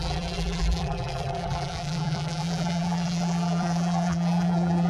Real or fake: fake